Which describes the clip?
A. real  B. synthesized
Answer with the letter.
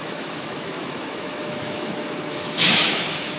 B